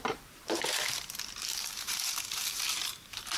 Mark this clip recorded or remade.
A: remade